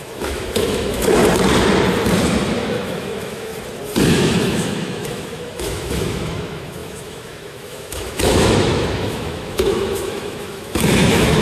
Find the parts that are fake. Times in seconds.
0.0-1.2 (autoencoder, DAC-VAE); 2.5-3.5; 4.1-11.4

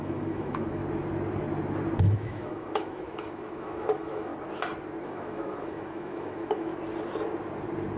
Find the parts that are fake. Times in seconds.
0.0-0.8 (autoencoder, DAC-VAE); 2.0-4.3; 5.0-6.7